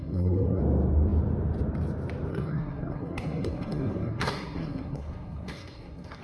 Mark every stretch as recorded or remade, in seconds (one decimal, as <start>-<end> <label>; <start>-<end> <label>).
0.0-0.6 remade; 0.6-2.3 recorded; 2.3-6.2 remade